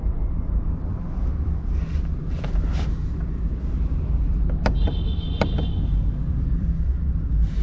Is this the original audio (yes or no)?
no